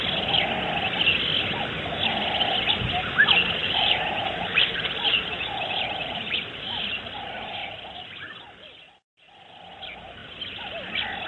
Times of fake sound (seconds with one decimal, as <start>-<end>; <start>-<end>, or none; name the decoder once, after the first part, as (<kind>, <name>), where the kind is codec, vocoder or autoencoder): 3.6-7.0 (vocoder, BigVGAN v2); 7.6-8.4